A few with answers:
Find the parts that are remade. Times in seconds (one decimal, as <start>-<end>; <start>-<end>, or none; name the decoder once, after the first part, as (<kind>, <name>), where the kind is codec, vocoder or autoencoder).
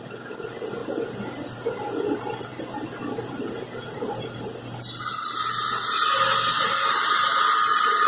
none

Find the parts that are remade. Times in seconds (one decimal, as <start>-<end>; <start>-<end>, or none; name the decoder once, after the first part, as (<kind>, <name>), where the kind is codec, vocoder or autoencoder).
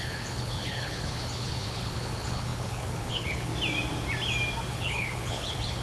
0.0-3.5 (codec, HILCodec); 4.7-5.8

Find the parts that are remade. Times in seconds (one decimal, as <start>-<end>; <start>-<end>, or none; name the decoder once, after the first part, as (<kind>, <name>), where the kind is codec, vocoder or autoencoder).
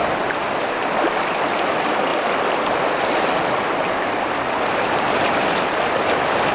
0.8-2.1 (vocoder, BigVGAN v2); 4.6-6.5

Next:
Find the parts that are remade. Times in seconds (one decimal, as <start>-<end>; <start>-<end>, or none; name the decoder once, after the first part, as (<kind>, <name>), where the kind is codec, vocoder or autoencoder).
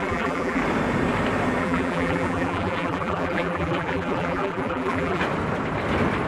0.0-0.6 (vocoder, BigVGAN v2); 1.6-5.2